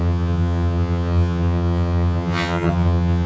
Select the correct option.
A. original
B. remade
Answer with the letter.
B